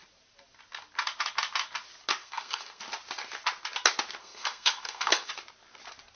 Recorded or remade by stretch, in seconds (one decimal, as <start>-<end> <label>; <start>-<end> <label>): 0.0-2.2 recorded; 2.2-2.8 remade; 2.8-4.2 recorded; 4.2-5.3 remade; 5.3-6.2 recorded